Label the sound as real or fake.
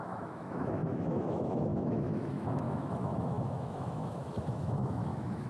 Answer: fake